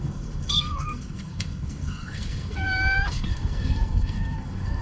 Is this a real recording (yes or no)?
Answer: no